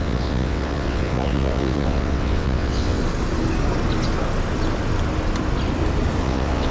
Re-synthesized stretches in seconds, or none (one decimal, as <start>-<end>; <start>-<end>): 0.0-3.0; 6.2-6.7